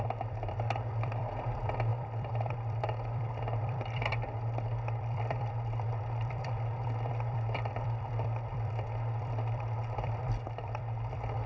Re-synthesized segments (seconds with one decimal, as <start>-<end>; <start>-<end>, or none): 0.0-11.5